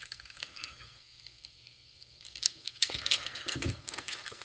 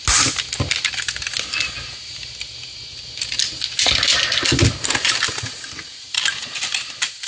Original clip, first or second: second